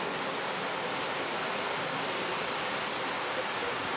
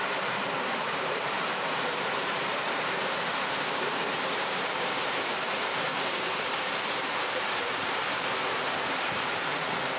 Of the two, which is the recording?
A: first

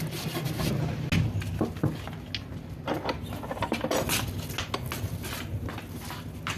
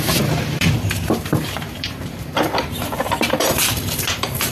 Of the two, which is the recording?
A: first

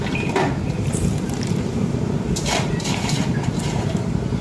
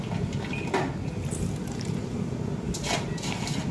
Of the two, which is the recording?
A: second